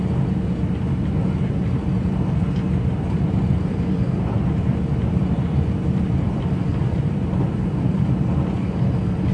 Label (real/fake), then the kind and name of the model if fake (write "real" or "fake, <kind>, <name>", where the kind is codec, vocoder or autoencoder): fake, vocoder, BigVGAN v2